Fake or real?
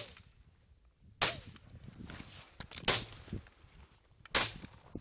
real